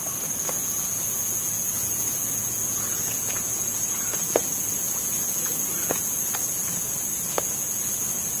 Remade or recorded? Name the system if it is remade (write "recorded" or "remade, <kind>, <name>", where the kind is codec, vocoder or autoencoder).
remade, vocoder, Vocos